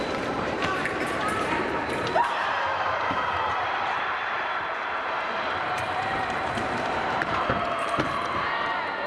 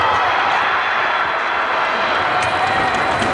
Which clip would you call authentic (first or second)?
second